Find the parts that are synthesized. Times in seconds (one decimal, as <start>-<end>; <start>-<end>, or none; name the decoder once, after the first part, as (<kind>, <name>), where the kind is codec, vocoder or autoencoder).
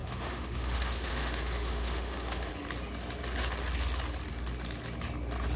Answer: 0.0-2.5 (autoencoder, DAC-VAE)